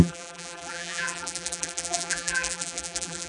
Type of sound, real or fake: fake